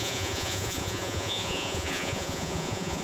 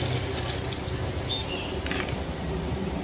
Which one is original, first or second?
second